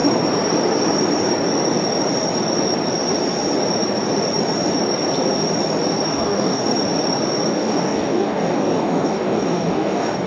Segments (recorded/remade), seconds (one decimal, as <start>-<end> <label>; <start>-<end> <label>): 0.0-6.1 recorded; 6.1-6.6 remade; 6.6-7.5 recorded; 7.5-10.3 remade